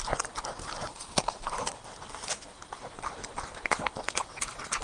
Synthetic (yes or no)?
no